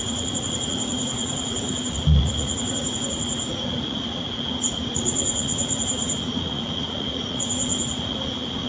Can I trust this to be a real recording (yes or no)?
no